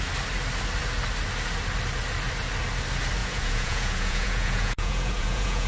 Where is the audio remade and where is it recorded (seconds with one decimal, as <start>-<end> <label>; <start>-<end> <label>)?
0.0-3.2 recorded; 3.2-5.7 remade